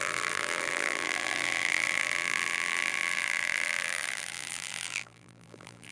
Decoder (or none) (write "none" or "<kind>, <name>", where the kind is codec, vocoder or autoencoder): vocoder, BigVGAN v2